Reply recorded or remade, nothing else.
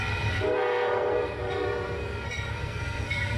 remade